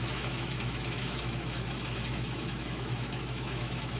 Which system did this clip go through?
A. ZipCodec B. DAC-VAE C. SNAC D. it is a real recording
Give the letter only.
B